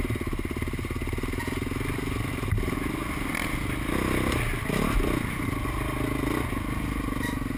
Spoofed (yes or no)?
no